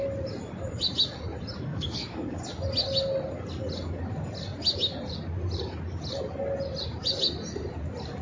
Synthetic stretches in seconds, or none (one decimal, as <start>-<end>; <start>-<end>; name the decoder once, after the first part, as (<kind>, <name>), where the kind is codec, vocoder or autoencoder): 1.7-2.4 (codec, DAC)